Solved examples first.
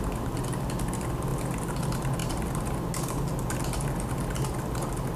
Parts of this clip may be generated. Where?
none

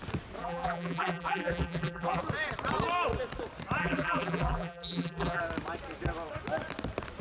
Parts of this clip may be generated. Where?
0.4-2.2; 3.8-5.4

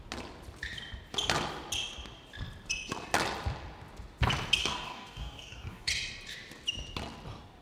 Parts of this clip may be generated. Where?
4.6-5.9